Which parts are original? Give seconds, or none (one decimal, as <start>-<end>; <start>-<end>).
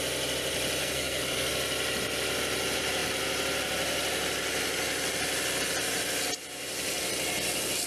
0.0-0.8; 1.5-7.9